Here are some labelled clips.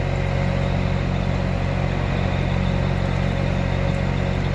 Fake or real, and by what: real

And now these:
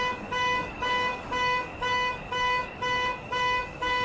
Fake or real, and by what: fake, codec, DAC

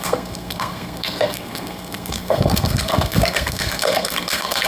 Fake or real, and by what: fake, codec, SNAC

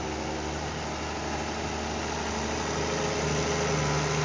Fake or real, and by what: real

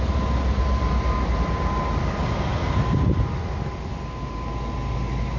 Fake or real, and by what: real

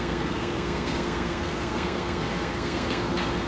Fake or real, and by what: fake, codec, SNAC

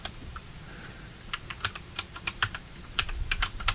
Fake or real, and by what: fake, vocoder, BigVGAN v2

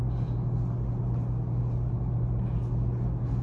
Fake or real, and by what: real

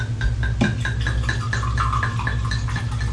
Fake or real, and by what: real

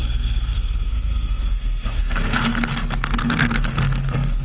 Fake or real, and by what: fake, codec, SNAC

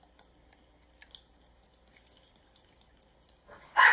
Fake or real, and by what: real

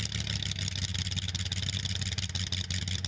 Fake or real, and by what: real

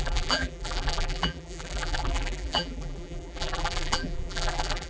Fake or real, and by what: fake, vocoder, BigVGAN v2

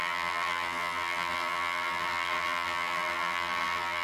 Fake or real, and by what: fake, vocoder, BigVGAN v2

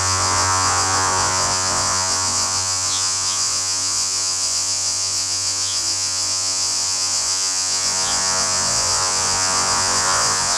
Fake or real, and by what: fake, vocoder, Vocos